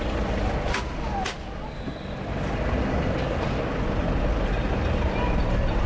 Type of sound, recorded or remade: recorded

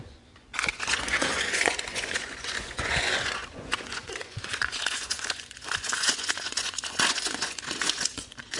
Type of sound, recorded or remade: remade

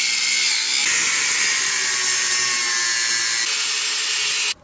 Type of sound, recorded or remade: recorded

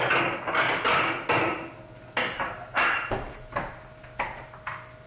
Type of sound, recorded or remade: recorded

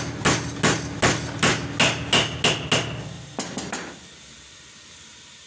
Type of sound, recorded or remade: recorded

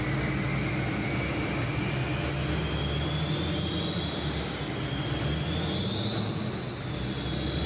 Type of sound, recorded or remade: recorded